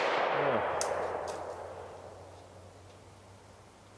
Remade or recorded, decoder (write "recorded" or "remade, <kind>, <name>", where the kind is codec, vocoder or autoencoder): recorded